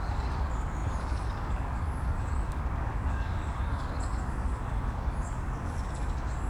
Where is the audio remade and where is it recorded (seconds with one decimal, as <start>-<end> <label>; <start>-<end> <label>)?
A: 0.0-6.5 remade